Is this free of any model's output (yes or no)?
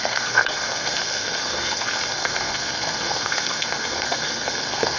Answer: no